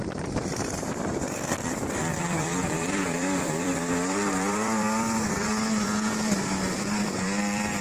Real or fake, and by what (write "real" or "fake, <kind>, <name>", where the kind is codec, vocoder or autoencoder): fake, vocoder, BigVGAN v2